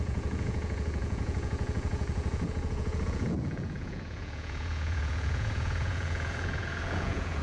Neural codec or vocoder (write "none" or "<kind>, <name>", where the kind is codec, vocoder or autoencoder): vocoder, Vocos